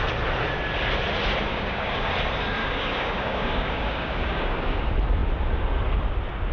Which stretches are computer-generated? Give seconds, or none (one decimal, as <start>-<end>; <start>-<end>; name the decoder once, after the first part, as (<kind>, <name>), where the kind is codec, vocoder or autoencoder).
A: 1.5-2.1 (codec, DAC); 2.6-4.8